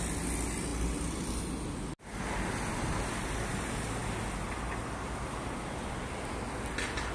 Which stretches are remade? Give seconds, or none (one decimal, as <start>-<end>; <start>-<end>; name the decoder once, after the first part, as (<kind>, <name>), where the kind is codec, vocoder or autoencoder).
none